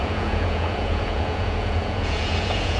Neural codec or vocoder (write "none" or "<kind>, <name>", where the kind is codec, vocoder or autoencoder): vocoder, Vocos